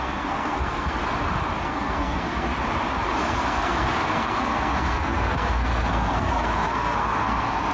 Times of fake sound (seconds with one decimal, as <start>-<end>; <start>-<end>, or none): 0.0-1.0; 1.6-2.5; 3.2-7.7